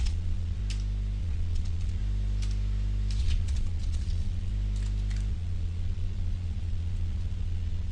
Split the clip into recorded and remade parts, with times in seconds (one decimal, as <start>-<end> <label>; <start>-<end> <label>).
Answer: 0.0-0.6 remade; 0.6-1.2 recorded; 1.2-2.0 remade; 2.0-3.2 recorded; 3.2-4.5 remade; 4.5-5.3 recorded; 5.3-7.9 remade